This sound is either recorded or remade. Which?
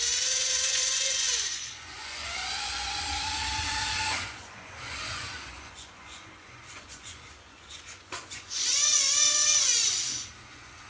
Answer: remade